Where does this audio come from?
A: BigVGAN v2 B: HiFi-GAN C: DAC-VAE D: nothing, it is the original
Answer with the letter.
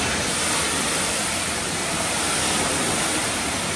D